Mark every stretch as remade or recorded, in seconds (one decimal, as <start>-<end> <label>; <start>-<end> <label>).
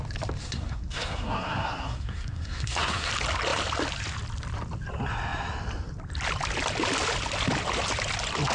0.0-0.4 recorded; 0.4-3.1 remade; 3.1-8.5 recorded